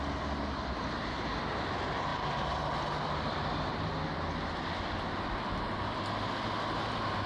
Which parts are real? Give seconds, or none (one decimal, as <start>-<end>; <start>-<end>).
0.0-7.3